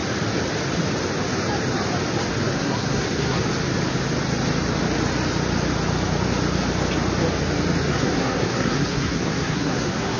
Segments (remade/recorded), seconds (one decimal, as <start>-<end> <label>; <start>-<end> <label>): 0.0-2.5 recorded; 2.5-3.4 remade; 3.4-7.9 recorded; 7.9-10.2 remade